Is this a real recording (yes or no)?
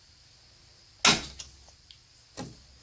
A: yes